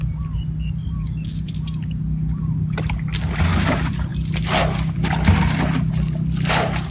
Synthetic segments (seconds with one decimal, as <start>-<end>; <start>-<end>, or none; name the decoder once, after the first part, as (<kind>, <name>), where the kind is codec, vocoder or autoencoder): none